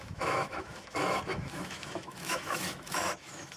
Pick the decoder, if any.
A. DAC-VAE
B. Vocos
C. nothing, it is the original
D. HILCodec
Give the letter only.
A